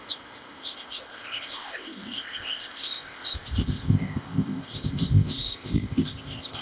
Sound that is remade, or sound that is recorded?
remade